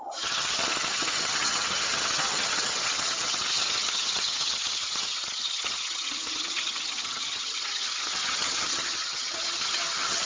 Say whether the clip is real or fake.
fake